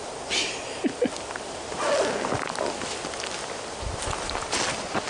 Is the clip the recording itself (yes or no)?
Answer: yes